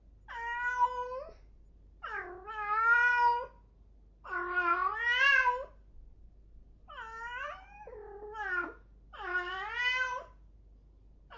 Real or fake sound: real